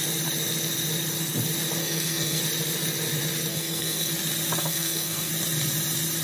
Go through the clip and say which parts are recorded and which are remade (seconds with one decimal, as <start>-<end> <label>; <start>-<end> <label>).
0.0-1.8 recorded; 1.8-2.4 remade; 2.4-3.5 recorded; 3.5-4.1 remade; 4.1-4.6 recorded; 4.6-5.3 remade; 5.3-6.2 recorded